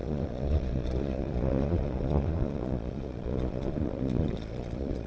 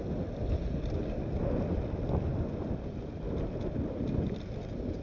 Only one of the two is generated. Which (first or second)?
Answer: first